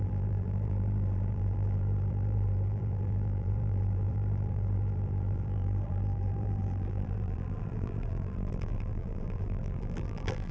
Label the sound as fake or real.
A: fake